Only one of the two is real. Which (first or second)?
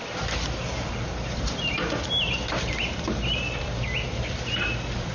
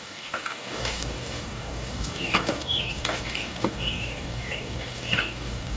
first